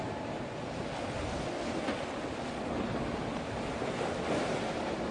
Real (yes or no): yes